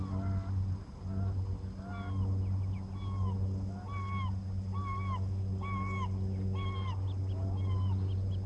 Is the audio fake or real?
real